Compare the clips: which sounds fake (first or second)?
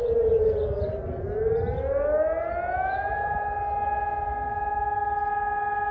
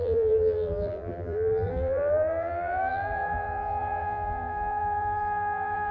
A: second